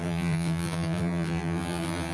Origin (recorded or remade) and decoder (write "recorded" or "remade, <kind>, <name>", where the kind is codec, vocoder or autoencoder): remade, vocoder, BigVGAN v2